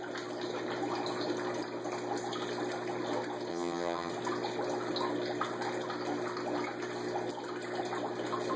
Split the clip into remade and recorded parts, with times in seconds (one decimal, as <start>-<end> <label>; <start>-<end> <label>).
0.0-3.5 recorded; 3.5-4.1 remade; 4.1-8.6 recorded